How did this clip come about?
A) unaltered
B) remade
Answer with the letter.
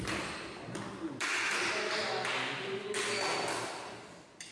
A